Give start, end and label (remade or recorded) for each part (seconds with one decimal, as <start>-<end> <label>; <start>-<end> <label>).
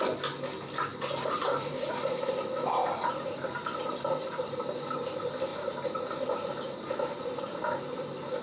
0.0-0.9 recorded; 0.9-1.9 remade; 1.9-2.8 recorded; 2.8-4.5 remade; 4.5-5.5 recorded; 5.5-8.4 remade